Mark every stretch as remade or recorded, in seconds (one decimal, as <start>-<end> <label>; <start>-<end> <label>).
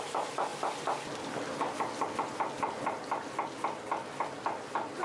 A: 0.0-5.0 recorded